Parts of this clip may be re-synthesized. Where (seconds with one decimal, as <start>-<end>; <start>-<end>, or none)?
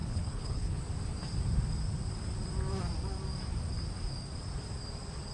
0.0-0.8